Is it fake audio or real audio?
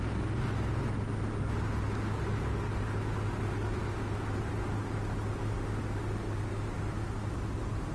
real